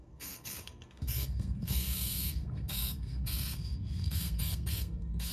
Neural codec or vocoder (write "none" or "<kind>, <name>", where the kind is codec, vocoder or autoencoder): codec, SNAC